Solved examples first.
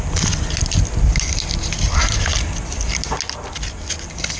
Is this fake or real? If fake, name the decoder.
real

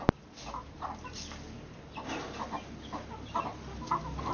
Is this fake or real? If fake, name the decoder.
real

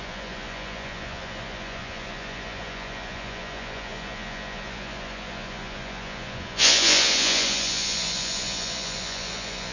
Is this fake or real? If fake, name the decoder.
fake, vocoder, Vocos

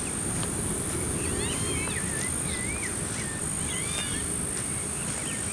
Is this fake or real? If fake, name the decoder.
real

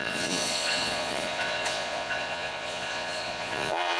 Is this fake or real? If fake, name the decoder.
fake, vocoder, Vocos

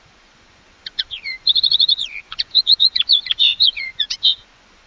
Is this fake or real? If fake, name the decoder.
fake, vocoder, Vocos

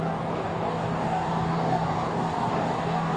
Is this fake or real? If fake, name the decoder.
fake, codec, DAC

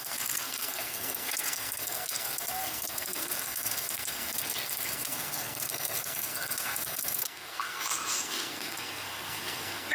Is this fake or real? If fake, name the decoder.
fake, codec, SNAC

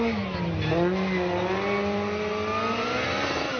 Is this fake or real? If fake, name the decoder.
real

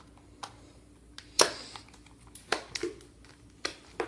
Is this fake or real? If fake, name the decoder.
real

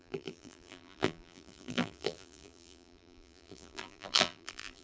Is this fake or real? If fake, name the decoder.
fake, vocoder, BigVGAN v2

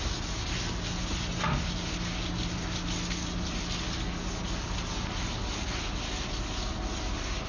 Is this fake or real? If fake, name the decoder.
real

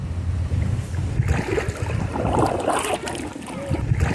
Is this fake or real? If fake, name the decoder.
real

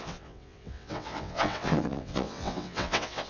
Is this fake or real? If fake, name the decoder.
fake, vocoder, WaveNeXt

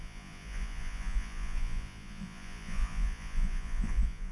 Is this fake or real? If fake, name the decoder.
fake, vocoder, Vocos